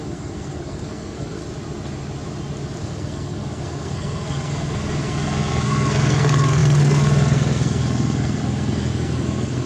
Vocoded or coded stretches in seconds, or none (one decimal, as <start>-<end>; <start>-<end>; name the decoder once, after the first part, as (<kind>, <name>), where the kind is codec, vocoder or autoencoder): 0.0-1.4 (codec, SNAC); 2.8-9.7